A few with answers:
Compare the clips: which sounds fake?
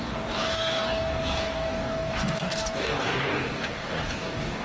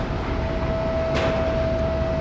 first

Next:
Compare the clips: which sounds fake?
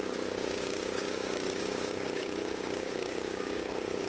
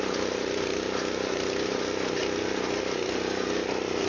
first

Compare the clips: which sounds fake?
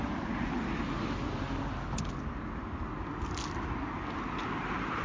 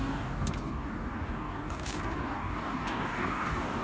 second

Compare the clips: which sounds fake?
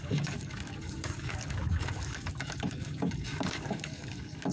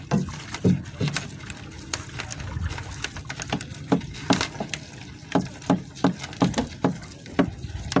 first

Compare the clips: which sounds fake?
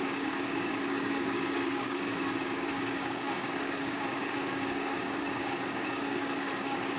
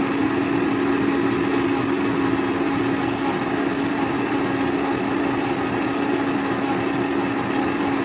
first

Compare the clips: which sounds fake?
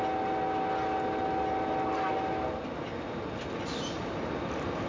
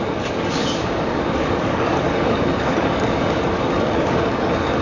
second